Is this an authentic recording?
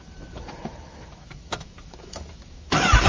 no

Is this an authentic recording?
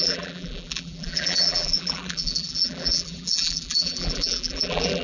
no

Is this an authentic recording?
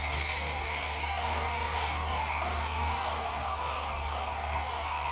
no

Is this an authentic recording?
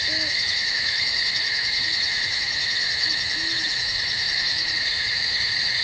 no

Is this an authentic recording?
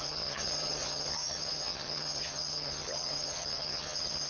no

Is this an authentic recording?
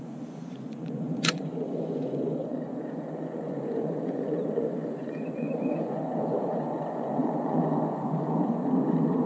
no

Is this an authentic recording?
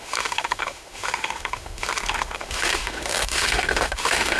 no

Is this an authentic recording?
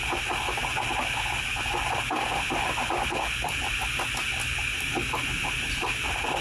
yes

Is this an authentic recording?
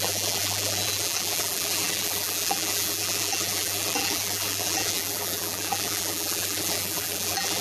no